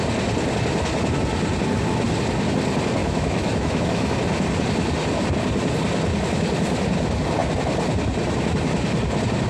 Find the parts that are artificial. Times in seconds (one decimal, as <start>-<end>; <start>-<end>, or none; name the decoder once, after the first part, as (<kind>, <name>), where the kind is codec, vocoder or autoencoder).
3.0-4.1 (autoencoder, DAC-VAE)